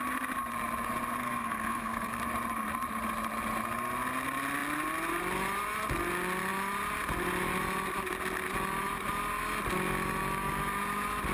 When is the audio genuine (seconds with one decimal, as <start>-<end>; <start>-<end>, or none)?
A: 0.0-1.2; 2.2-11.3